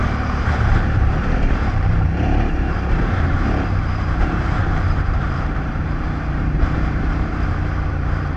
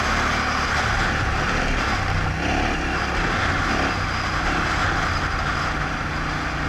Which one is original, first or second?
second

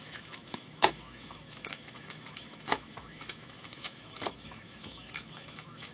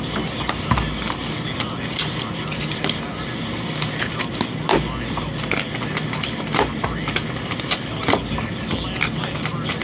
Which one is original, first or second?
second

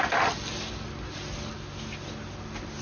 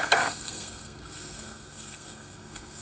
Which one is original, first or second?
first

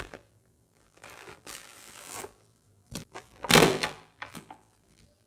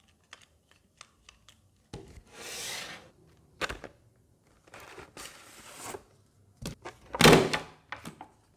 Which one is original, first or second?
second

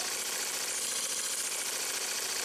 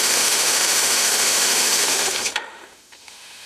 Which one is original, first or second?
first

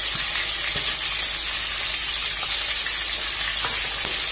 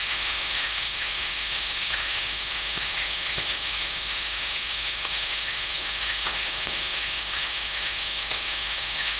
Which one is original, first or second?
first